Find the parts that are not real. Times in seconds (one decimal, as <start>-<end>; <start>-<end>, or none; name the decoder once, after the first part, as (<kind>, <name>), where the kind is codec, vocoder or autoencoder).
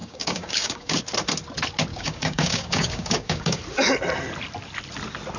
0.0-1.0 (codec, DAC); 1.9-3.6